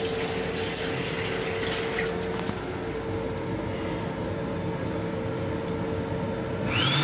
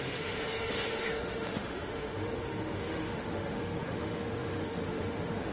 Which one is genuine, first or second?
first